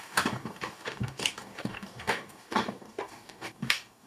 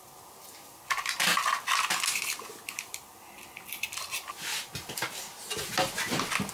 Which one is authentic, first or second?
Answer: second